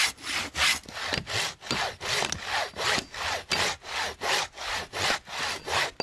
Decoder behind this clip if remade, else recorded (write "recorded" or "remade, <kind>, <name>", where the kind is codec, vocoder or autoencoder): recorded